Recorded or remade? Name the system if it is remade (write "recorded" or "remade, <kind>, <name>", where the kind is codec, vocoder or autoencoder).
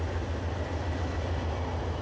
recorded